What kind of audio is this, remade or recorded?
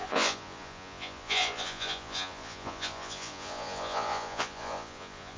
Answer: remade